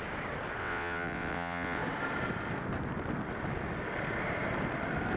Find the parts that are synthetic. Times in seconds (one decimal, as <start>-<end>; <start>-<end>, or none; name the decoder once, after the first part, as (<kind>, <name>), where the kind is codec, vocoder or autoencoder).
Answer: 0.6-1.8 (vocoder, WaveNeXt)

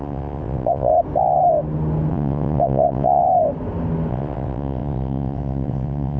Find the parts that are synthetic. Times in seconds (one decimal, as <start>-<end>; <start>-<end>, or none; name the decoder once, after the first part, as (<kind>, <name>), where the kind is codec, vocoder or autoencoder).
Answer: 0.0-0.9 (vocoder, WaveNeXt); 2.1-3.2; 4.1-6.2